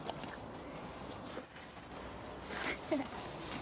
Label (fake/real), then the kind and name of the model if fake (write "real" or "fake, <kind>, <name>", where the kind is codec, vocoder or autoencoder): real